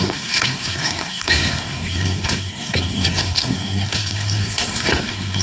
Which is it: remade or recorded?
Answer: remade